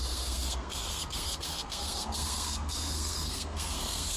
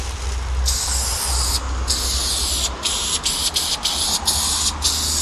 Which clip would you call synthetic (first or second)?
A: first